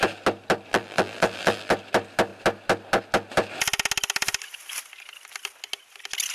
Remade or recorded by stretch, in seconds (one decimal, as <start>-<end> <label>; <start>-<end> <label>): 0.0-0.7 recorded; 0.7-1.7 remade; 1.7-6.3 recorded